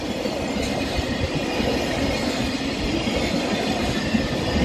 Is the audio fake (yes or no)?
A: no